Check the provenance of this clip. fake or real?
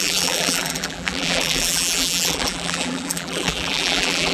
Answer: fake